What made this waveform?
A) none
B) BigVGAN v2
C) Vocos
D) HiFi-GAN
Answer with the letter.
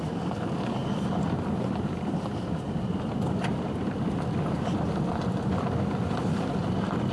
B